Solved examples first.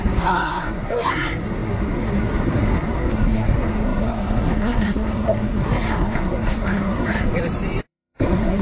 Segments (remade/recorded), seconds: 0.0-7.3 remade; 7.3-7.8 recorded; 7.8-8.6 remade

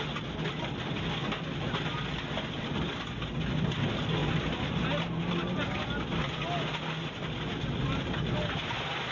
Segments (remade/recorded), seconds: 0.0-9.1 recorded

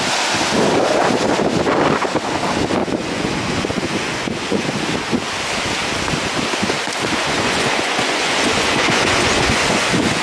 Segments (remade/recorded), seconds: 0.0-2.8 recorded; 2.8-4.7 remade; 4.7-7.2 recorded; 7.2-10.2 remade

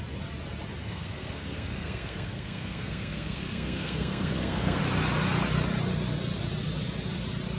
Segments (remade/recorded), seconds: 0.0-0.8 recorded; 0.8-4.8 remade; 4.8-7.6 recorded

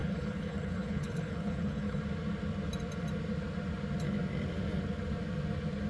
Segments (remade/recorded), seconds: 0.0-2.0 remade; 2.0-5.9 recorded

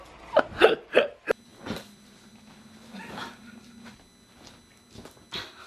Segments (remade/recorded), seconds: 0.0-5.7 recorded